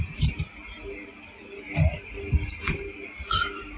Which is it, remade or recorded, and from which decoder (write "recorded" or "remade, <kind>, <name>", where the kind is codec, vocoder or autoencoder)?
recorded